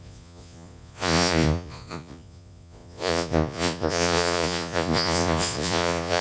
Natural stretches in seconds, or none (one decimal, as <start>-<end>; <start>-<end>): none